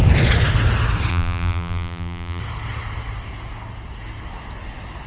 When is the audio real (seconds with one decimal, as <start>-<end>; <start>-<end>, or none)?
0.0-1.1; 2.4-5.1